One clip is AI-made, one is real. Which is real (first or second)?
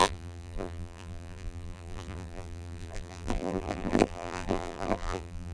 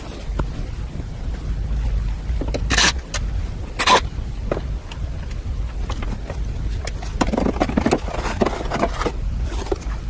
second